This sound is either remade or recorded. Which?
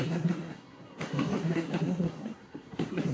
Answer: remade